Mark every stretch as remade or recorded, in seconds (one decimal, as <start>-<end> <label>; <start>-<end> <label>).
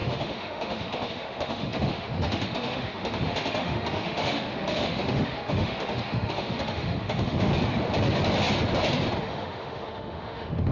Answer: 0.0-7.5 remade; 7.5-9.2 recorded; 9.2-10.7 remade